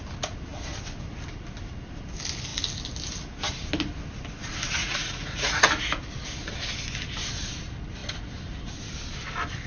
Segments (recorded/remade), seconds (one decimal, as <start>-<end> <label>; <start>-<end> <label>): 0.0-4.8 recorded; 4.8-5.6 remade; 5.6-9.7 recorded